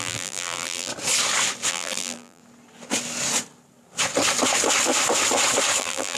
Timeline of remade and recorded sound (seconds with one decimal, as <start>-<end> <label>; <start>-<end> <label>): 0.0-0.9 remade; 0.9-1.7 recorded; 1.7-2.4 remade; 2.4-5.8 recorded; 5.8-6.2 remade